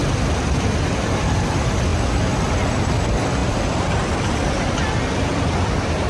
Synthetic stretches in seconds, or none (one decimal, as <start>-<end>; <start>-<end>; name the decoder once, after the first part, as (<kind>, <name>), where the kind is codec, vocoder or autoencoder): 0.7-1.9 (vocoder, BigVGAN v2); 2.9-6.1